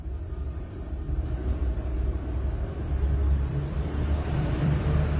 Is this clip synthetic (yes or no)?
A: yes